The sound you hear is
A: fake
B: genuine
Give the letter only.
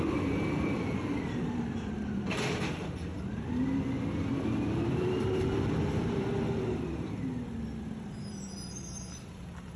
A